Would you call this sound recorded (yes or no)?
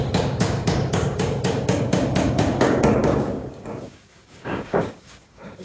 no